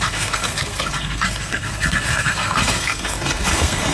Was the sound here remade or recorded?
remade